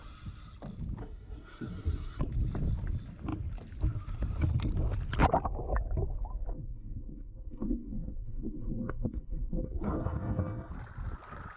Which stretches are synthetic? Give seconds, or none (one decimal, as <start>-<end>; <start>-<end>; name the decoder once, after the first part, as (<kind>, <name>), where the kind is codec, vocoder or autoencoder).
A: 1.0-2.2 (codec, SNAC); 6.5-10.7